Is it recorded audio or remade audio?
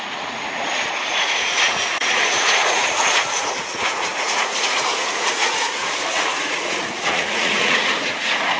remade